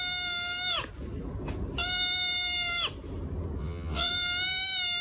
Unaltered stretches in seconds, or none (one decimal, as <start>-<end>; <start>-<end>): 0.0-3.6; 4.1-5.0